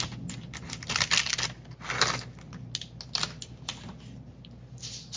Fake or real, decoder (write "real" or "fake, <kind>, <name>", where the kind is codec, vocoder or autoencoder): real